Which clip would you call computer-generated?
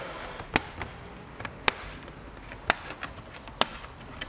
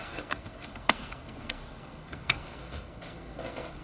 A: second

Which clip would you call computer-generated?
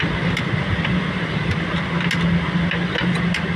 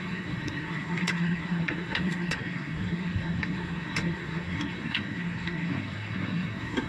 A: second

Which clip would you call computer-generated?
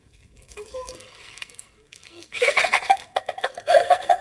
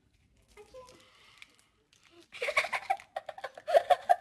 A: first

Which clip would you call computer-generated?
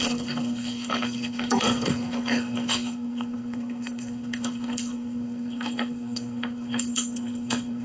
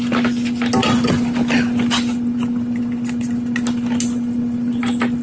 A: first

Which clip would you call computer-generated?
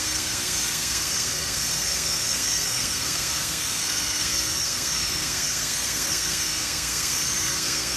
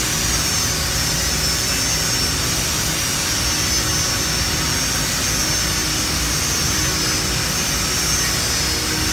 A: first